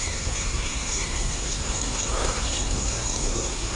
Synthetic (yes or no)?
yes